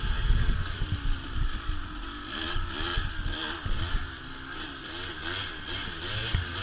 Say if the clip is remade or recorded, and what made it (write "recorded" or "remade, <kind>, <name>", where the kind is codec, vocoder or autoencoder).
recorded